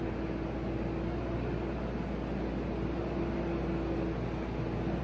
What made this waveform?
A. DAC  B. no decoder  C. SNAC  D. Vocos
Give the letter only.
B